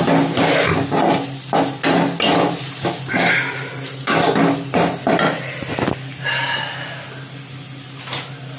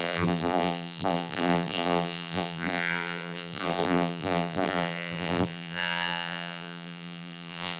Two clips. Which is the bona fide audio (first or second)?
first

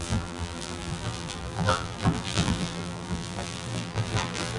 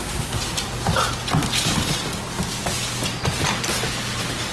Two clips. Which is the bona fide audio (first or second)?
second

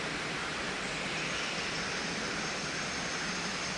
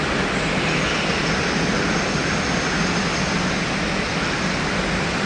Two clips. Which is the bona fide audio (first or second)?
second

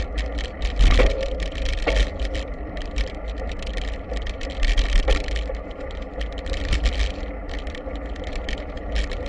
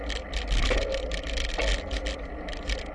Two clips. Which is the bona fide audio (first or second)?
second